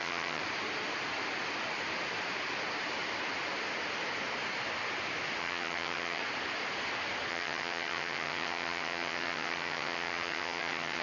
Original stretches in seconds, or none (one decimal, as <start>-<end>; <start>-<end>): 0.4-5.4; 6.2-7.3